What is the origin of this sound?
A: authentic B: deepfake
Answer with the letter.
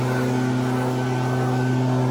A